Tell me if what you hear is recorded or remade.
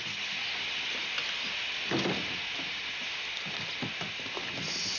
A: recorded